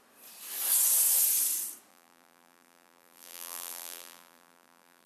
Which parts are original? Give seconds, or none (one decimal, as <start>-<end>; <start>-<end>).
0.0-1.9

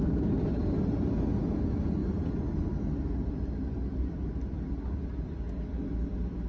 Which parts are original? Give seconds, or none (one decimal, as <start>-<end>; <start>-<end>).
0.0-6.5

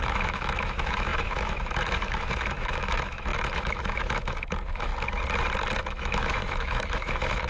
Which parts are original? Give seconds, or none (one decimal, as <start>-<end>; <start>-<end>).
4.9-5.8